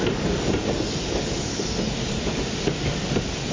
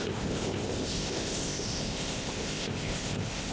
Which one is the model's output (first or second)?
second